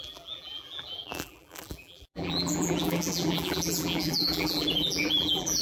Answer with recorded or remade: remade